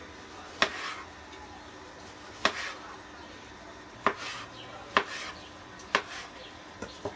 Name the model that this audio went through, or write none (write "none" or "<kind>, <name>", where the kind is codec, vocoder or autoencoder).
none